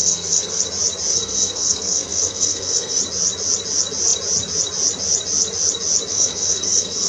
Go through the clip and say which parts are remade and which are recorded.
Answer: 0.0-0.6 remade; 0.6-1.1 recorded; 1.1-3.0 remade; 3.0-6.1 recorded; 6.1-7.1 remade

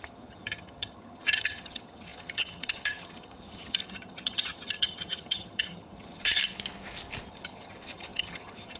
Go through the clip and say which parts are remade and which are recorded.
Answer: 0.0-6.4 remade; 6.4-7.3 recorded; 7.3-8.8 remade

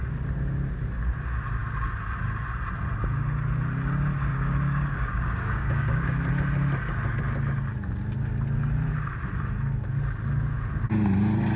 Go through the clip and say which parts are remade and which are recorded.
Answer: 0.0-4.3 recorded; 4.3-6.3 remade; 6.3-11.6 recorded

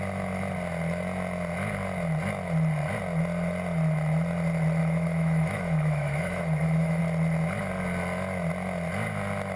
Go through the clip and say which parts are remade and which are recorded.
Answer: 0.0-4.8 recorded; 4.8-7.0 remade; 7.0-9.6 recorded

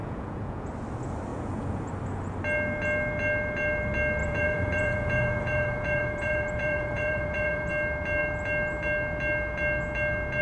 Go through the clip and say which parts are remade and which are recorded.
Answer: 0.0-0.7 remade; 0.7-1.3 recorded; 1.3-1.9 remade; 1.9-4.2 recorded; 4.2-7.7 remade; 7.7-10.4 recorded